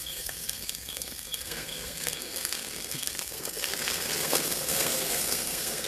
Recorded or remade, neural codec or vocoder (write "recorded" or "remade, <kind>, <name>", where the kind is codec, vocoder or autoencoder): remade, codec, SNAC